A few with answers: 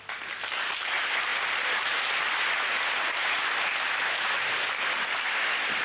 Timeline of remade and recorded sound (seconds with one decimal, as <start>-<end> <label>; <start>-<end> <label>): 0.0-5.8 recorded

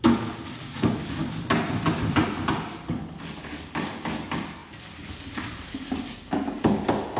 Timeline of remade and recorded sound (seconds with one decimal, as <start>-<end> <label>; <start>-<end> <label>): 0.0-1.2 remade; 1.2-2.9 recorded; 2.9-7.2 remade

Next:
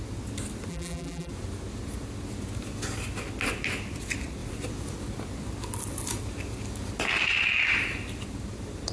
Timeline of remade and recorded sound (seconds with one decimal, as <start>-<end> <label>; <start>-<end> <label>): 0.0-0.7 recorded; 0.7-1.3 remade; 1.3-8.9 recorded

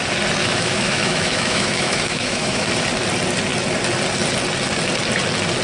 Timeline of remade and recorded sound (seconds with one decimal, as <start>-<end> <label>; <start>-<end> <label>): 0.0-0.4 recorded; 0.4-2.7 remade; 2.7-5.6 recorded

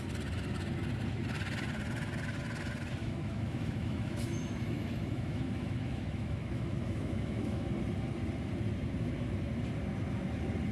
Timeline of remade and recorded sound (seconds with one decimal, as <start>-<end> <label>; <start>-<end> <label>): 0.0-3.0 recorded; 3.0-7.7 remade; 7.7-10.7 recorded